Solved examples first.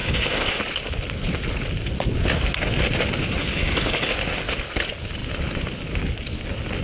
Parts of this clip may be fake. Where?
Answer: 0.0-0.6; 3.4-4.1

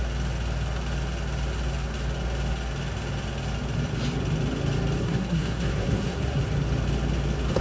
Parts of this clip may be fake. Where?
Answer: 5.0-6.4